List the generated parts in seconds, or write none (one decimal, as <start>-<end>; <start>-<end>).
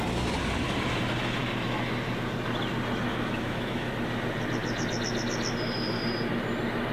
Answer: 3.1-3.9